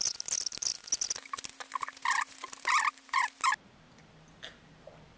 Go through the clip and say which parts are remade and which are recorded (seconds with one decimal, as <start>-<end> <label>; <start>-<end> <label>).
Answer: 0.0-5.2 recorded